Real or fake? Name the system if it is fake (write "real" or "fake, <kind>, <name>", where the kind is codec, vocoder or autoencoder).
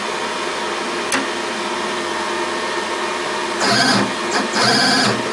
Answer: real